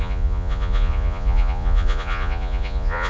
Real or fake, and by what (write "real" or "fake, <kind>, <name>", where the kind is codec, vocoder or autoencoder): fake, vocoder, Vocos